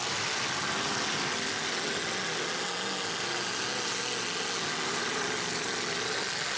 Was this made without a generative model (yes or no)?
yes